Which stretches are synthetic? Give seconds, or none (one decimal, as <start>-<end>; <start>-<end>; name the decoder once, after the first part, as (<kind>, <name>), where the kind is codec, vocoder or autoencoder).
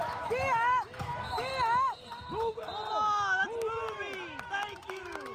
0.0-1.5 (autoencoder, DAC-VAE); 4.5-5.3